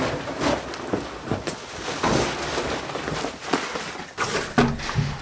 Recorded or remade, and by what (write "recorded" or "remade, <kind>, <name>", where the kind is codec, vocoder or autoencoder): recorded